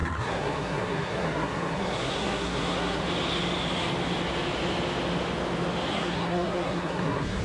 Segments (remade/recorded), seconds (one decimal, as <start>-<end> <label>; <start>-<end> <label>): 0.0-3.0 remade; 3.0-5.9 recorded; 5.9-7.4 remade